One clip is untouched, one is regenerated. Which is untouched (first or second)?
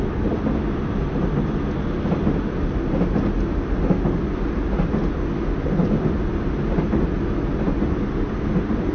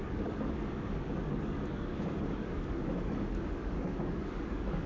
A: first